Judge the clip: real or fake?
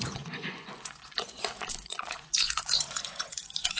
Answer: fake